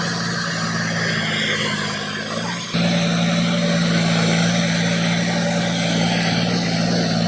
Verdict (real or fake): real